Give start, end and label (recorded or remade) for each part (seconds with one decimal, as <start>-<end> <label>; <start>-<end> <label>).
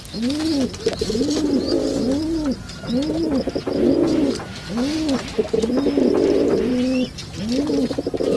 0.0-8.4 recorded